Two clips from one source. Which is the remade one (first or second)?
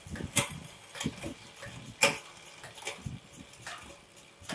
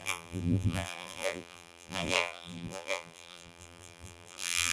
second